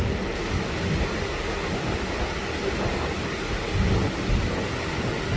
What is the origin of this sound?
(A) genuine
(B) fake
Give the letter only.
A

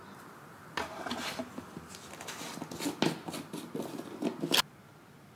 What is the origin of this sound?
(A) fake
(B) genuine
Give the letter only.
B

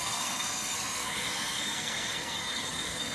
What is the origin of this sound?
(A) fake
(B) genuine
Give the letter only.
A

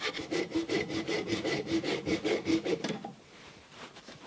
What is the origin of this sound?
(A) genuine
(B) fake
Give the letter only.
B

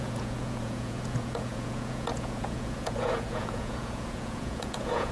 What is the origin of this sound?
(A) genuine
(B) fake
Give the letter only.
B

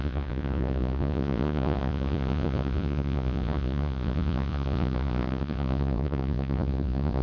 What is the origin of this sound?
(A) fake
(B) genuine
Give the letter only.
A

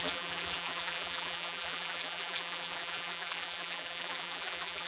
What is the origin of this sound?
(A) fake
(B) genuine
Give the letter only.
A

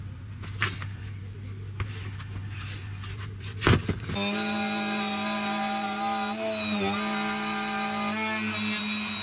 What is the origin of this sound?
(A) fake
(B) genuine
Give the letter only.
B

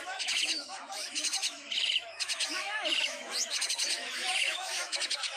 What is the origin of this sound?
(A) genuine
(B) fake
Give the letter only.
B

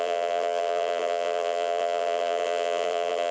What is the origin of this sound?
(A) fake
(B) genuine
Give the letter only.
A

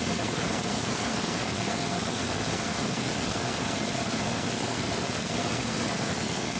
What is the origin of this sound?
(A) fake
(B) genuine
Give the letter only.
A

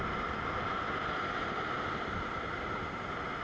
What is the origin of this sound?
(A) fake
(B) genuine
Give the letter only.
B